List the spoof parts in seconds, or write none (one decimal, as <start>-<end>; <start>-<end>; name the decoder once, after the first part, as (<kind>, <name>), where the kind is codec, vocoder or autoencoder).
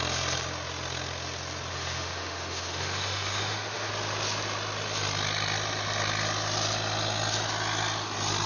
1.7-3.9 (autoencoder, DAC-VAE)